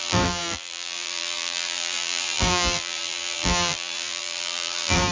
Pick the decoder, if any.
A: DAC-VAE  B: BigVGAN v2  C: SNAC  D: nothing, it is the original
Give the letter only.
B